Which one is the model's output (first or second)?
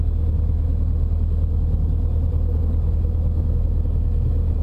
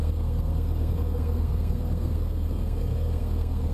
second